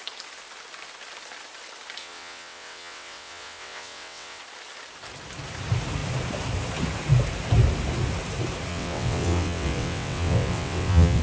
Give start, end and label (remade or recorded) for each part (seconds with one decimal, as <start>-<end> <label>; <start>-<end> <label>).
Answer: 0.0-2.0 recorded; 2.0-4.4 remade; 4.4-8.7 recorded; 8.7-11.2 remade